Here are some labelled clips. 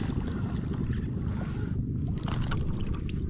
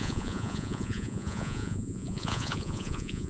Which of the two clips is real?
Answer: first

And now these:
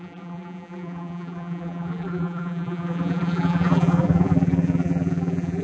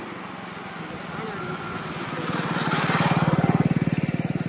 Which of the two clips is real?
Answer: second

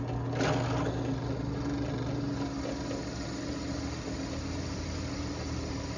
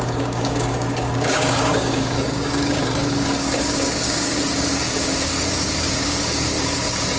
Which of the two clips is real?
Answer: first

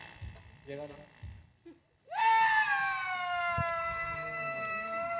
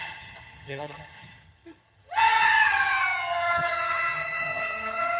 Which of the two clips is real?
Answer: first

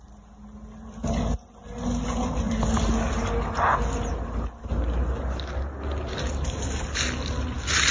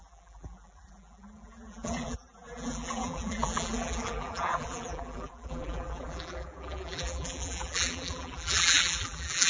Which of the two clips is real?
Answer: first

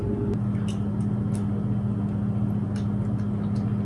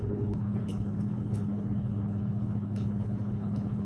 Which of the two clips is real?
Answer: first